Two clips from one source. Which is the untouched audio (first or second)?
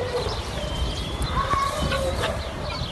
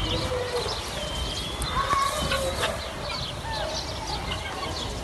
second